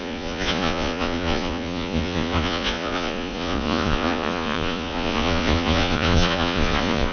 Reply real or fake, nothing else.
fake